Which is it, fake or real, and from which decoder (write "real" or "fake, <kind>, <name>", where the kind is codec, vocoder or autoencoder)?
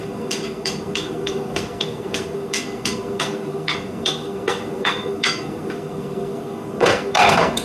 fake, codec, SNAC